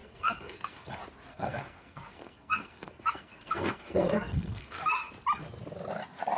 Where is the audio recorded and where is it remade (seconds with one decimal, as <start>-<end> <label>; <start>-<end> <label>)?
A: 0.0-0.9 remade; 0.9-1.3 recorded; 1.3-5.1 remade; 5.1-6.4 recorded